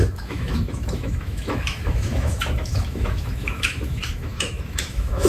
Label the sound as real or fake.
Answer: fake